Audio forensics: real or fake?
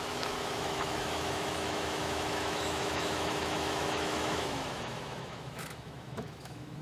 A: fake